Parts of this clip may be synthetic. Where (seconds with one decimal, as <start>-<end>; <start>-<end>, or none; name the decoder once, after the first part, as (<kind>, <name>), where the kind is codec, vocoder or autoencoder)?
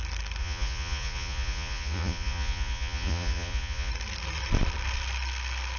0.4-3.9 (vocoder, Vocos)